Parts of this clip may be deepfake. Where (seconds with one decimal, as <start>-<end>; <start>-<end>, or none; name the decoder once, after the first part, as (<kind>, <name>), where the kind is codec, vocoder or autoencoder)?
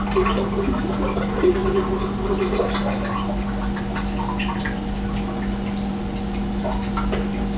none